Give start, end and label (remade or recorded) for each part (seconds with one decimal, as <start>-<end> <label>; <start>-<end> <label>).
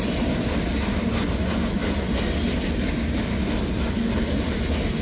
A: 0.0-5.0 recorded